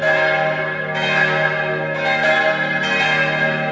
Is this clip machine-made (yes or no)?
no